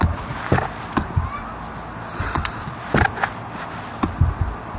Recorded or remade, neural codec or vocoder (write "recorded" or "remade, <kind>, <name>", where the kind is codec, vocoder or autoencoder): recorded